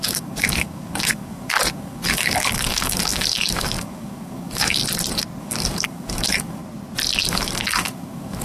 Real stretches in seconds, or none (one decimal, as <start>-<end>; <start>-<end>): 4.8-5.4; 6.6-7.2